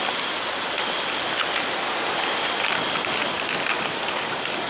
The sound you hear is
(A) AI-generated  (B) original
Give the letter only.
B